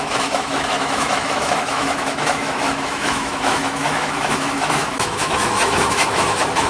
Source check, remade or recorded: remade